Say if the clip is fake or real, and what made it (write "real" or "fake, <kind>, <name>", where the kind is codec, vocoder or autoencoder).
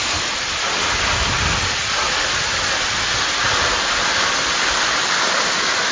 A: real